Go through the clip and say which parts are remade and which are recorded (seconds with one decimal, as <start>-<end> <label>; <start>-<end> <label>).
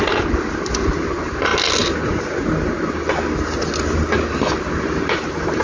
0.0-1.5 remade; 1.5-4.5 recorded; 4.5-5.6 remade